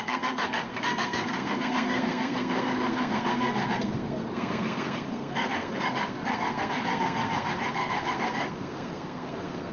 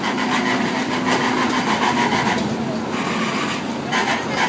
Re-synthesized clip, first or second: first